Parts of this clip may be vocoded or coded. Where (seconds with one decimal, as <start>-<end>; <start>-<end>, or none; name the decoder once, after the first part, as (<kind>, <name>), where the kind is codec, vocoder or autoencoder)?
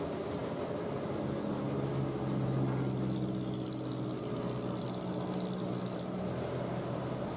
none